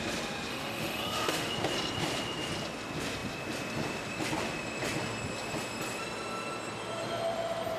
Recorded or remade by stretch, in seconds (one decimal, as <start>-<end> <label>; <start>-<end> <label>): 0.0-0.5 recorded; 0.5-1.5 remade; 1.5-7.8 recorded